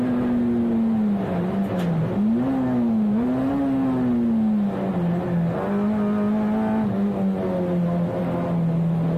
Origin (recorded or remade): recorded